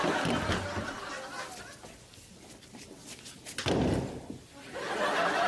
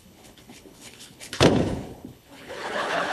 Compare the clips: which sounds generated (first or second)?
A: second